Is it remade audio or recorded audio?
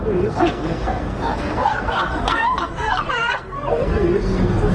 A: remade